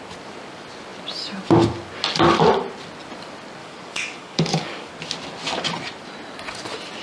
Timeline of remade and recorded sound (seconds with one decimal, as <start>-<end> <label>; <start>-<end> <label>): 0.0-3.6 recorded; 3.6-4.9 remade; 4.9-7.0 recorded